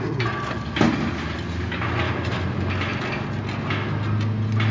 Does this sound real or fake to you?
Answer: real